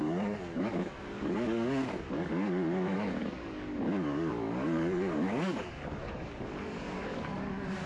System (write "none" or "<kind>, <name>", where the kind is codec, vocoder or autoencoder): codec, DAC